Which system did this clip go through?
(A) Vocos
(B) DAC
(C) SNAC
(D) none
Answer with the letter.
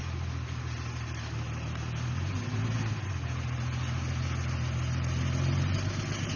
D